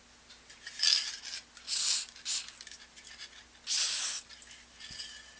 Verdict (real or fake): real